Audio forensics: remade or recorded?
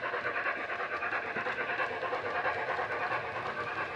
recorded